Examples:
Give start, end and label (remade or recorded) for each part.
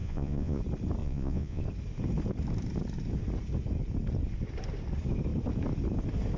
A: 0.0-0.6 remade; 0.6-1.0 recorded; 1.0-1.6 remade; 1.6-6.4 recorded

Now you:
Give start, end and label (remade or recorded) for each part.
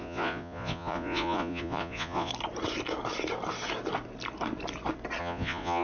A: 0.0-2.3 remade; 2.3-5.2 recorded; 5.2-5.8 remade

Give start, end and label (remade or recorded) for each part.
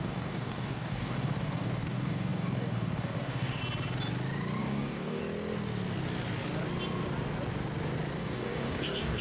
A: 0.0-3.6 remade; 3.6-4.6 recorded; 4.6-5.2 remade; 5.2-8.2 recorded; 8.2-9.2 remade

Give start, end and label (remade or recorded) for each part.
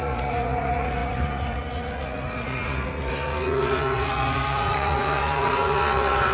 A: 0.0-6.3 remade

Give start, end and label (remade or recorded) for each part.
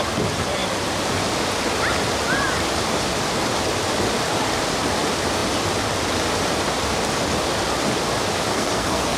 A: 0.0-8.5 recorded; 8.5-9.2 remade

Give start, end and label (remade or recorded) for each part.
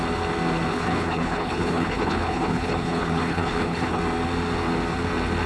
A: 0.0-0.7 recorded; 0.7-4.0 remade; 4.0-5.5 recorded